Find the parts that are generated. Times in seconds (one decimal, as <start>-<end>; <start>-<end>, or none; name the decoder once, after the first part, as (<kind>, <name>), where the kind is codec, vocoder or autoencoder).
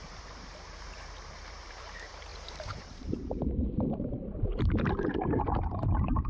0.0-6.3 (vocoder, BigVGAN v2)